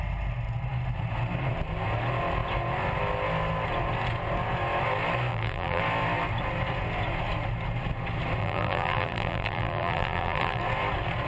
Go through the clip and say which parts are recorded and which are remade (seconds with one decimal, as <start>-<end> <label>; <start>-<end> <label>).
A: 0.0-5.3 recorded; 5.3-5.8 remade; 5.8-8.4 recorded; 8.4-10.6 remade; 10.6-11.3 recorded